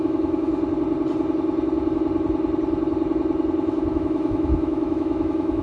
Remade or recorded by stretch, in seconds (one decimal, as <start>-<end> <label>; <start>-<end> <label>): 0.0-0.5 remade; 0.5-3.9 recorded; 3.9-5.6 remade